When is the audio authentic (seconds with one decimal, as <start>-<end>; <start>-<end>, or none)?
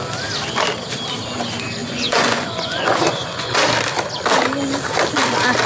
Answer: 0.0-1.8; 3.6-5.7